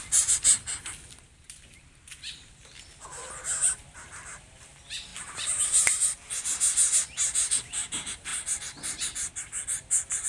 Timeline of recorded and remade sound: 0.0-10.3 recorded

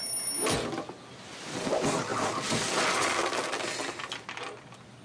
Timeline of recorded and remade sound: 0.0-5.0 recorded

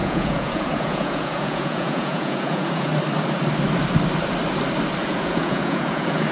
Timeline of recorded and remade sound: 0.0-2.9 remade; 2.9-5.0 recorded; 5.0-6.3 remade

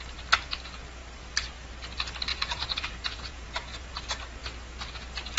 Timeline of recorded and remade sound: 0.0-2.3 recorded; 2.3-3.9 remade; 3.9-5.4 recorded

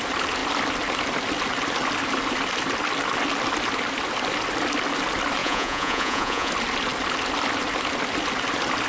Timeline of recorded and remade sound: 0.0-5.4 recorded; 5.4-6.5 remade; 6.5-8.9 recorded

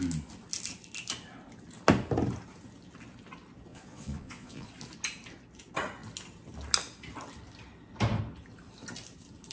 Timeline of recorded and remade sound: 0.0-3.7 recorded; 3.7-4.7 remade; 4.7-9.5 recorded